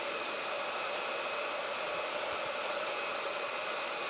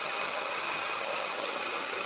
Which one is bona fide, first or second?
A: first